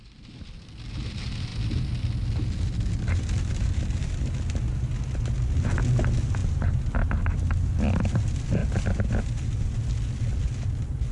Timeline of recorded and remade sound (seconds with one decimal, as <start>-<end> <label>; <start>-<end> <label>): 0.0-11.1 recorded